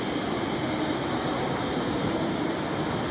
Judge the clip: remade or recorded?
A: recorded